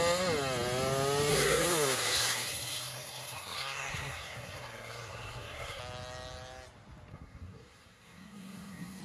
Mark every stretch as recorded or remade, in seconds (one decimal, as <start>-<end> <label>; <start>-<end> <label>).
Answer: 0.0-1.3 recorded; 1.3-5.8 remade; 5.8-7.1 recorded; 7.1-9.0 remade